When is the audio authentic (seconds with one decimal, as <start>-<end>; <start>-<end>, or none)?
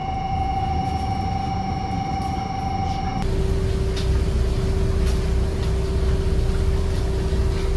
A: 0.0-7.8